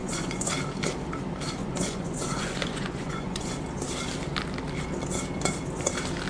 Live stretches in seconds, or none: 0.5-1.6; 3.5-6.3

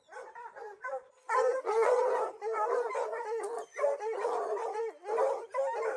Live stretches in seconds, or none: 4.6-6.0

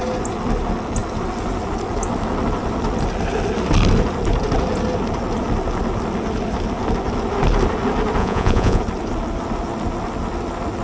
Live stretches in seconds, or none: 0.0-8.2; 8.8-10.8

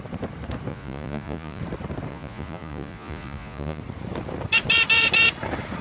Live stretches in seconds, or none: 0.0-0.7; 1.6-2.1; 3.8-5.8